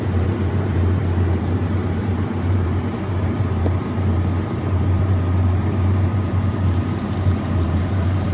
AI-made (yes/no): yes